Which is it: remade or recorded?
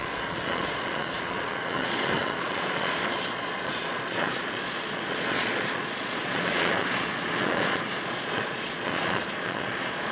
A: remade